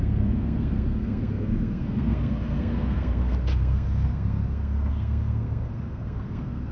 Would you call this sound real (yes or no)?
no